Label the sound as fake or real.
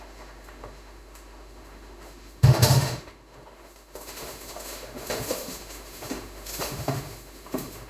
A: fake